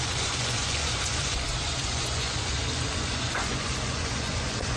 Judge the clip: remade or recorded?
remade